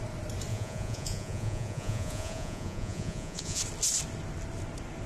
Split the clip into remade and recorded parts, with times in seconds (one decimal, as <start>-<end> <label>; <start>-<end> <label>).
0.0-0.5 recorded; 0.5-3.6 remade; 3.6-5.1 recorded